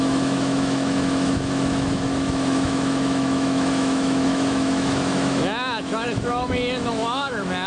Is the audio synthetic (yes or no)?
yes